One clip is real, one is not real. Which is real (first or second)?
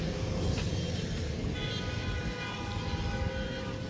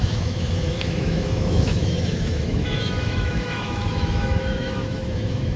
first